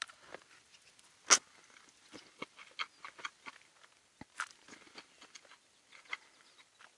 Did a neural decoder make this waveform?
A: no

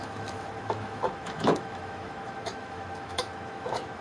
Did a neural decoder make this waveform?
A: yes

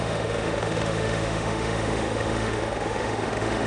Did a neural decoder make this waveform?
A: yes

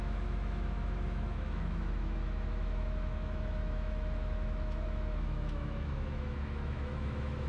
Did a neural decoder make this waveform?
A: yes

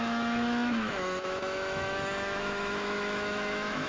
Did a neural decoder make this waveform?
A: yes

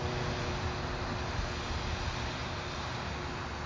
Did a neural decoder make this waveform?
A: no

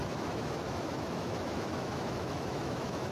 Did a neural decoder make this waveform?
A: yes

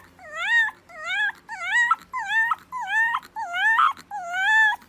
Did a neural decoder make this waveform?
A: no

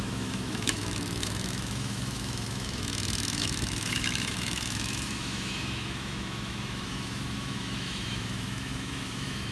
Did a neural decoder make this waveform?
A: yes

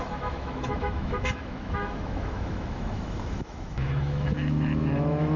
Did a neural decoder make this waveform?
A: yes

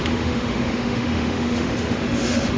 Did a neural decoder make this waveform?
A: yes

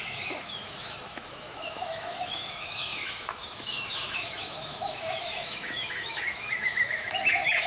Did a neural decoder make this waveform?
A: yes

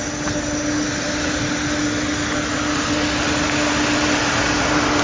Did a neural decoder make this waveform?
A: no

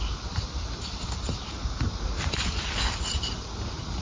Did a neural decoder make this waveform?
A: no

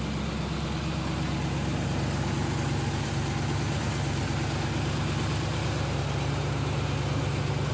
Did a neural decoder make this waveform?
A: no